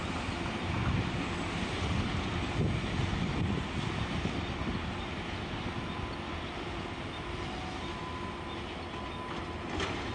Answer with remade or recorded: recorded